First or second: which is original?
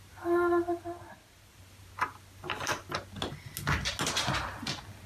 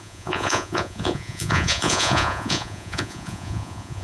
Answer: first